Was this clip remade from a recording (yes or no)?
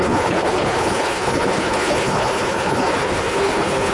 yes